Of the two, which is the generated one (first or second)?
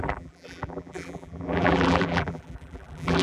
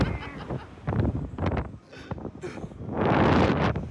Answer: first